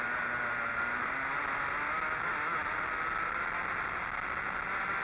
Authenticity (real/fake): real